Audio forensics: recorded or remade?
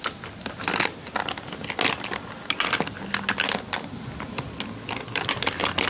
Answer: recorded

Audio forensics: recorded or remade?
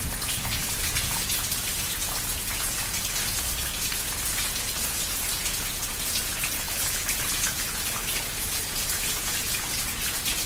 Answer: remade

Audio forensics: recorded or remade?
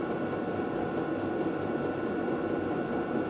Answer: recorded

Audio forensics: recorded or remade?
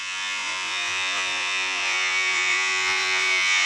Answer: remade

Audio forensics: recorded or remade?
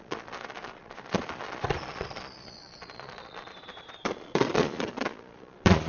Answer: remade